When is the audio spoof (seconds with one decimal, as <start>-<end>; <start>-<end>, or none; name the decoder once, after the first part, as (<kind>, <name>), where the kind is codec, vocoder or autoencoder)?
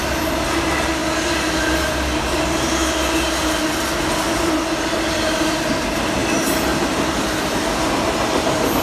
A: none